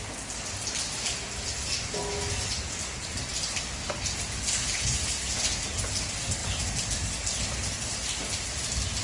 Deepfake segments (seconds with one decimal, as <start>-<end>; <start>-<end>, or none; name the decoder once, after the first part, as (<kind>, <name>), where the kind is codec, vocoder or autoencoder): none